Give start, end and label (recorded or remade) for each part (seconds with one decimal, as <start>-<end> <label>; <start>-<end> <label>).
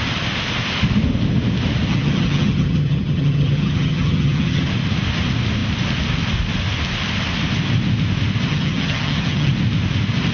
0.0-1.9 recorded; 1.9-4.7 remade; 4.7-8.5 recorded; 8.5-9.5 remade; 9.5-10.3 recorded